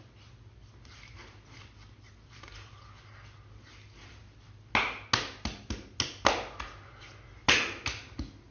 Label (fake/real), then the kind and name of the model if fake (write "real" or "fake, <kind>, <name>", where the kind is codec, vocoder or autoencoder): real